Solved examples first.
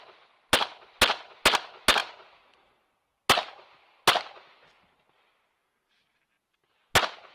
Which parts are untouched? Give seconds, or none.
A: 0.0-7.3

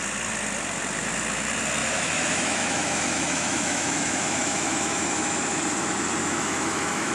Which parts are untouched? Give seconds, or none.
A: 0.0-1.8; 5.6-6.2

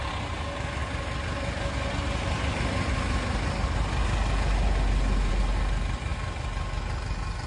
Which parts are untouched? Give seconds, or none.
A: 0.0-7.5